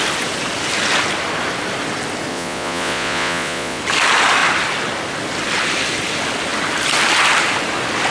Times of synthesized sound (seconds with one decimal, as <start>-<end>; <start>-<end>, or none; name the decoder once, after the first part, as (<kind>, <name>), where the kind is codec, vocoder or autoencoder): 2.3-3.8 (vocoder, Vocos)